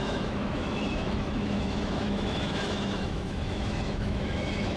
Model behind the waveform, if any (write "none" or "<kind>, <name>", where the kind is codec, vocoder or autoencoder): autoencoder, DAC-VAE